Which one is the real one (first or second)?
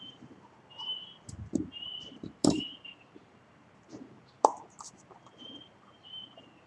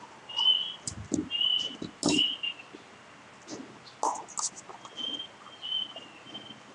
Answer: second